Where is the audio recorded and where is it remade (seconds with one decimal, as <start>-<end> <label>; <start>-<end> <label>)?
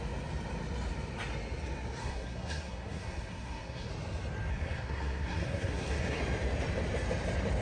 0.0-2.0 recorded; 2.0-3.9 remade; 3.9-4.5 recorded; 4.5-6.2 remade; 6.2-7.6 recorded